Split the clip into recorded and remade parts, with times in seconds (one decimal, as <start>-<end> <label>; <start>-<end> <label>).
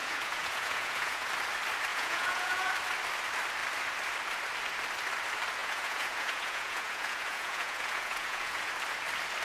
0.0-1.3 remade; 1.3-1.9 recorded; 1.9-2.7 remade; 2.7-5.6 recorded; 5.6-8.7 remade; 8.7-9.4 recorded